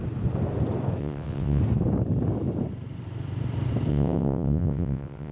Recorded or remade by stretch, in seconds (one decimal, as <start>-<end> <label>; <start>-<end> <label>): 0.0-1.0 recorded; 1.0-1.6 remade; 1.6-3.9 recorded; 3.9-5.3 remade